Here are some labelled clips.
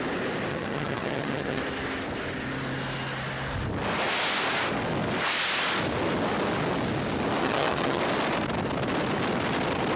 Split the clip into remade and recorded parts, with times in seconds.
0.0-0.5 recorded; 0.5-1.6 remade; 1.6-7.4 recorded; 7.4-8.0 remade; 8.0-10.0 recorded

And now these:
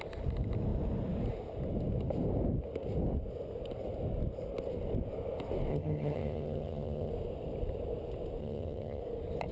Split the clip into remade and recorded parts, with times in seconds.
0.0-5.7 recorded; 5.7-7.1 remade; 7.1-8.4 recorded; 8.4-9.0 remade; 9.0-9.5 recorded

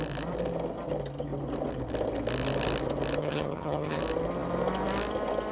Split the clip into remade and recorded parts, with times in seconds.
0.0-3.2 recorded; 3.2-4.0 remade; 4.0-5.5 recorded

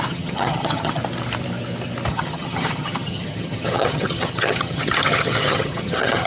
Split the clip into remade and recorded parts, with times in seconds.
0.0-1.0 remade; 1.0-2.1 recorded; 2.1-6.3 remade

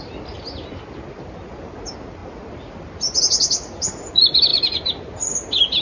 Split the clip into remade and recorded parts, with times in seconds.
0.0-5.8 recorded

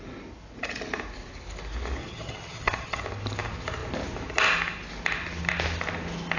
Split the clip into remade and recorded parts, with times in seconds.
0.0-2.0 recorded; 2.0-3.0 remade; 3.0-6.4 recorded